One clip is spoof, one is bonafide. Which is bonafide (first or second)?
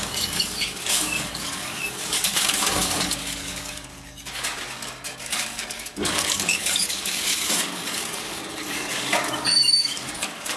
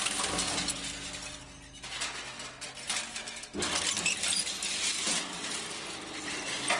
second